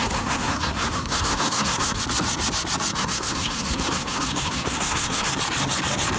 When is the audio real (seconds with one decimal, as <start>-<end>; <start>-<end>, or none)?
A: 2.0-2.9; 5.3-6.2